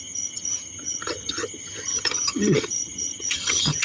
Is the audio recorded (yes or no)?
no